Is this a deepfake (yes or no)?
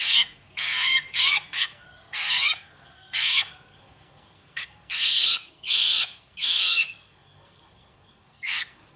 yes